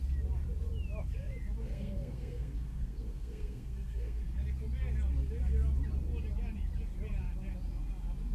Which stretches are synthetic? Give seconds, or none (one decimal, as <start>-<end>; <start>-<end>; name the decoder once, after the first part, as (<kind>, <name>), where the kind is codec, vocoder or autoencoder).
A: 1.6-4.2 (codec, SNAC)